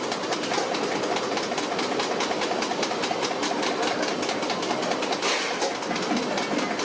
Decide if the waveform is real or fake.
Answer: real